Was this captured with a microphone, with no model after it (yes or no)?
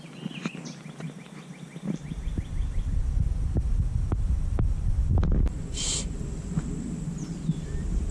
yes